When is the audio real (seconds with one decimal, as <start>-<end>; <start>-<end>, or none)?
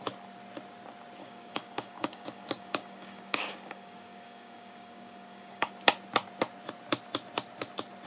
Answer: 0.0-1.2; 5.7-8.1